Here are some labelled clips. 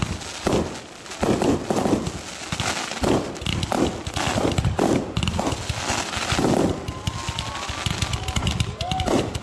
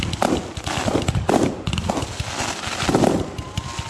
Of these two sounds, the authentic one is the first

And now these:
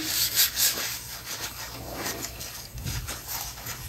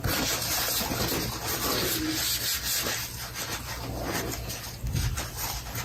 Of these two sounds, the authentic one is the second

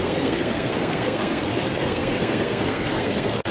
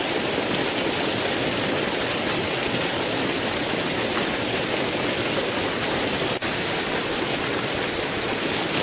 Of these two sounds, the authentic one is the second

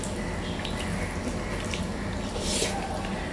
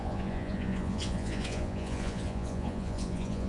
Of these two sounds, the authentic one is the first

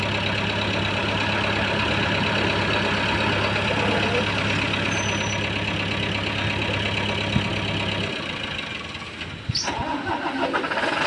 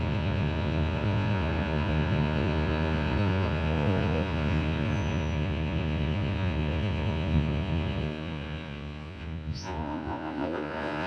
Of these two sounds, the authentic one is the first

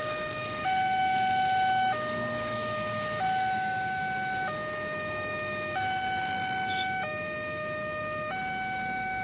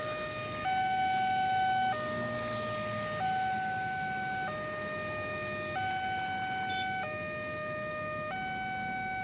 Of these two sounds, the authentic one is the second